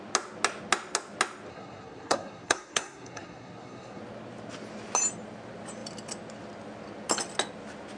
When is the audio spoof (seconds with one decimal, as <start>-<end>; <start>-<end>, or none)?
1.5-4.0